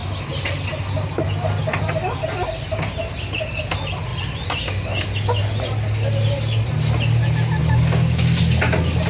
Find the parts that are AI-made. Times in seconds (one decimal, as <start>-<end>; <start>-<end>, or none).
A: 7.6-8.4